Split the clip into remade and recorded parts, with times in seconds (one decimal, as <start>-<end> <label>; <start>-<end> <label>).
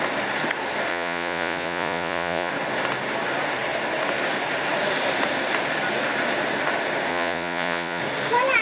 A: 0.0-0.9 recorded; 0.9-2.5 remade; 2.5-7.1 recorded; 7.1-8.0 remade; 8.0-8.6 recorded